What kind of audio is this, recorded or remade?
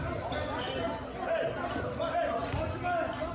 recorded